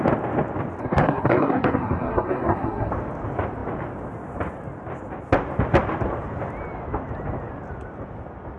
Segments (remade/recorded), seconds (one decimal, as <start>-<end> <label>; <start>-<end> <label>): 0.0-0.8 recorded; 0.8-2.9 remade; 2.9-8.6 recorded